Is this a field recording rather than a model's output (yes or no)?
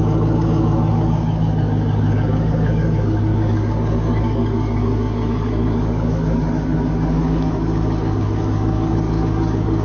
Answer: no